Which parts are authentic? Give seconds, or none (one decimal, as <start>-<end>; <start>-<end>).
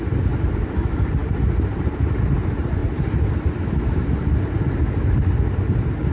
0.0-6.1